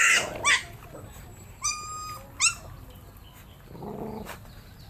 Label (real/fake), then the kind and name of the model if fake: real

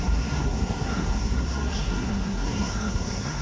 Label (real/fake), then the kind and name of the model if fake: fake, codec, SNAC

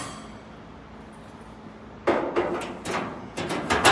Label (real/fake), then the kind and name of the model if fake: real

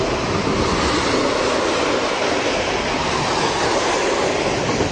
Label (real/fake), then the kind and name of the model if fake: real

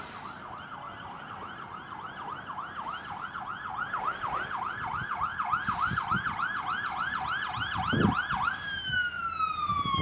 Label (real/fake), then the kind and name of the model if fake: real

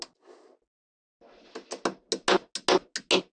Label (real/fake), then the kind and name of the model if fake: real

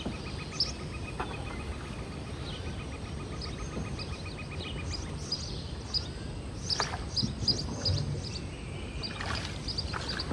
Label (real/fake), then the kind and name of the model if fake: real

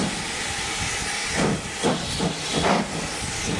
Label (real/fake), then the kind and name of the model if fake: real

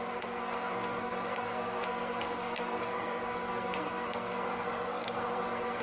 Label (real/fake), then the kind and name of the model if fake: fake, codec, SNAC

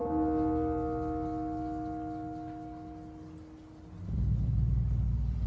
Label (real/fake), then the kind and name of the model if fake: real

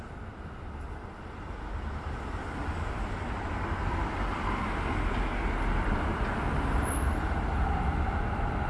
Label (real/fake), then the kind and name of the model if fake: real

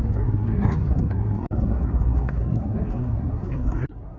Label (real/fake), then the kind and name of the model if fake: fake, codec, SNAC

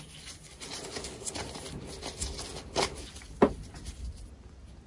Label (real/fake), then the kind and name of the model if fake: real